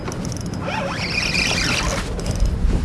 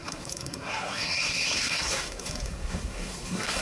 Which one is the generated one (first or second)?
second